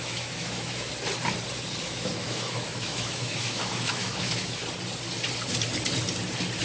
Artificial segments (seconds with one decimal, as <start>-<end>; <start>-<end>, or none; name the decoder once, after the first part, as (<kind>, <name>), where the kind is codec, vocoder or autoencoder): 0.0-0.9 (autoencoder, DAC-VAE); 1.8-4.6